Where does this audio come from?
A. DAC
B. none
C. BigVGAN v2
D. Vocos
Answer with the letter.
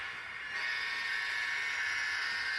B